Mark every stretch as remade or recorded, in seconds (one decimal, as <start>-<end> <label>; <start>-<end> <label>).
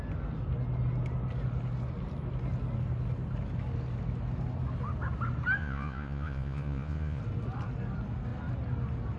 0.0-5.6 recorded; 5.6-7.2 remade; 7.2-9.2 recorded